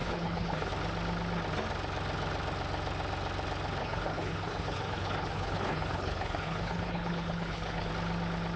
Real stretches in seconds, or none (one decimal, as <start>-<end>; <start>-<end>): 0.7-3.8; 7.9-8.6